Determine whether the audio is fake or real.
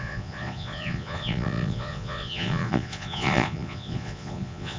fake